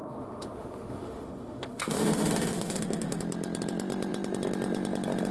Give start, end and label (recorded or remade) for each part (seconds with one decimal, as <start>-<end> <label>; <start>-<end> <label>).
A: 0.0-3.2 remade; 3.2-5.3 recorded